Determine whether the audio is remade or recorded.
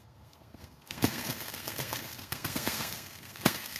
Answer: remade